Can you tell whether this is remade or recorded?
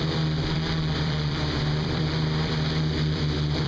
remade